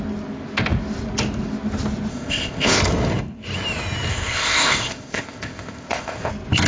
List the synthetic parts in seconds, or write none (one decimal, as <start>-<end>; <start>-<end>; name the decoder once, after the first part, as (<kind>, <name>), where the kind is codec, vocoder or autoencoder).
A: 2.1-2.8 (codec, ZipCodec); 4.1-6.3